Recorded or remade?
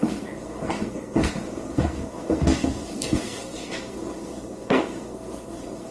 remade